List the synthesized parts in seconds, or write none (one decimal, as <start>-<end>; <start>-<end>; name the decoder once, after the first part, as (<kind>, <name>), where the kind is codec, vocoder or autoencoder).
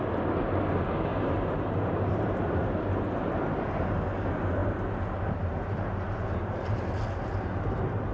1.1-3.5 (vocoder, BigVGAN v2)